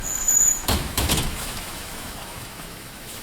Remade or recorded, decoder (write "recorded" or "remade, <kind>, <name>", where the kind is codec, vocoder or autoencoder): remade, autoencoder, DAC-VAE